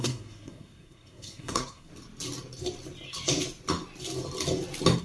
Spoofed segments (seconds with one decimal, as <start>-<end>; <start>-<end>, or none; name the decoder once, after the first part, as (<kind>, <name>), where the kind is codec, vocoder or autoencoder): 0.0-1.9 (codec, SNAC)